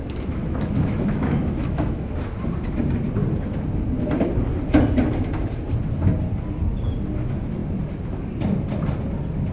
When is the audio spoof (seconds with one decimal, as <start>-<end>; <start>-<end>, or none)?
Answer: 0.0-2.2